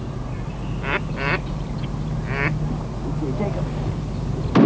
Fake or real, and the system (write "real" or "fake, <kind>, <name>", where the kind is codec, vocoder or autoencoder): real